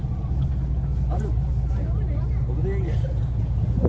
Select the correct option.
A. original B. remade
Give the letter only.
B